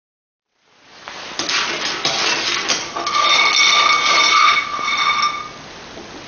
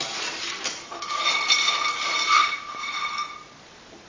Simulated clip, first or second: second